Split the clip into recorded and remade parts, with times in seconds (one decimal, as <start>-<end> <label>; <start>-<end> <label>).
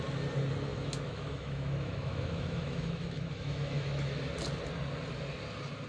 0.0-0.7 recorded; 0.7-4.2 remade; 4.2-5.9 recorded